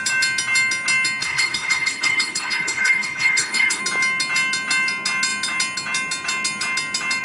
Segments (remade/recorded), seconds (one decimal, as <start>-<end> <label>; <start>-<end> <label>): 0.0-1.2 recorded; 1.2-3.8 remade; 3.8-7.2 recorded